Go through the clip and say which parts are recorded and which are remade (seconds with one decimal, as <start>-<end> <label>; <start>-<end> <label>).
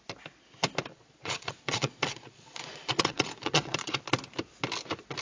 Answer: 0.0-0.9 recorded; 0.9-4.0 remade; 4.0-5.2 recorded